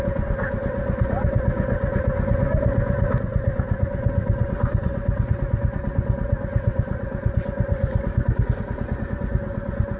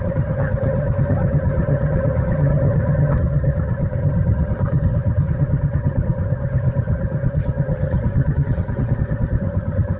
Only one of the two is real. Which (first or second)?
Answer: first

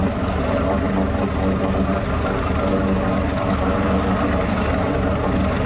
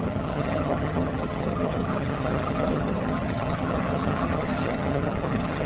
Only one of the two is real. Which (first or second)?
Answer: first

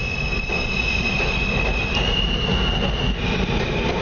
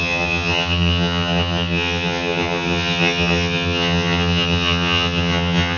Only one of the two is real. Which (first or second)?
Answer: first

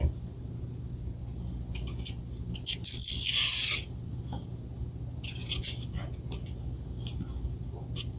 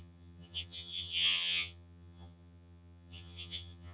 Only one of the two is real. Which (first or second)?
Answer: first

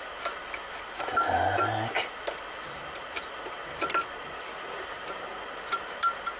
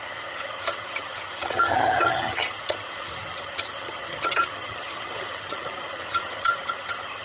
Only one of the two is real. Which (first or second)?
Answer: first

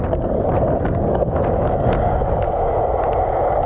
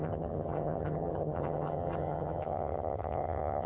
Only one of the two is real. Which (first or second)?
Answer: first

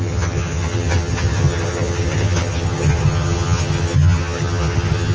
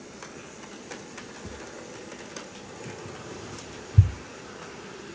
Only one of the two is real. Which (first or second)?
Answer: second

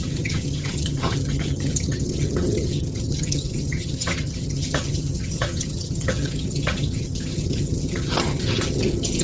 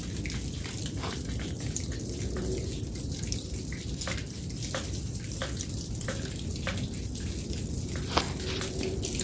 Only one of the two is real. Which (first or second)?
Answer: second